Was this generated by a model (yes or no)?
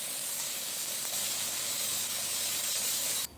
yes